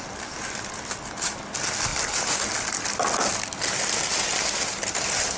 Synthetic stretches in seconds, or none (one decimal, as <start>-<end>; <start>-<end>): none